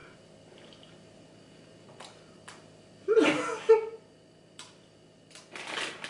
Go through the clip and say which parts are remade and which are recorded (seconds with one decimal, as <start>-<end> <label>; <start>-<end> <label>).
0.0-6.1 recorded